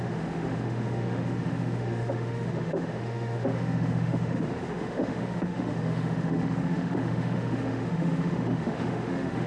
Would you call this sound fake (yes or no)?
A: yes